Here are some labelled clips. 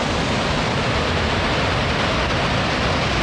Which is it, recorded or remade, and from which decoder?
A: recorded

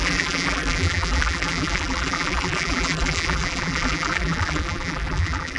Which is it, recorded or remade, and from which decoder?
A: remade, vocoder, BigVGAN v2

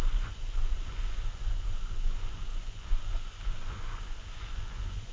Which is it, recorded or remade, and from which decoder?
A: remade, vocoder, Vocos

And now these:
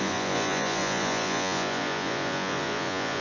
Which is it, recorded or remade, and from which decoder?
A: remade, vocoder, Vocos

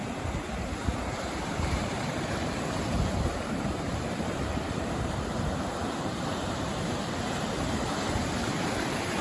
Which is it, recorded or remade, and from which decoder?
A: remade, vocoder, BigVGAN v2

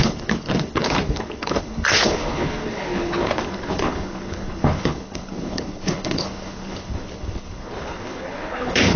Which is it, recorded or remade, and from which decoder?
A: remade, codec, HILCodec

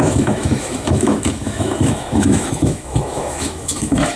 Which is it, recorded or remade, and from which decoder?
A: remade, autoencoder, DAC-VAE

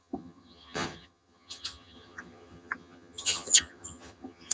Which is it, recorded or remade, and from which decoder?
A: remade, vocoder, HiFi-GAN